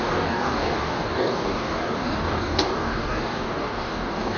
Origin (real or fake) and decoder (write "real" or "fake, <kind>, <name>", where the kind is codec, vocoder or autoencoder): fake, codec, DAC